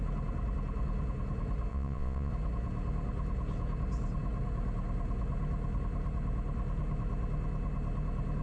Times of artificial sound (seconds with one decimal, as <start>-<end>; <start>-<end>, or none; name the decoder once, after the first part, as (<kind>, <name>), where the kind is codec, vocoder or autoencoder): 1.7-2.3 (vocoder, Vocos)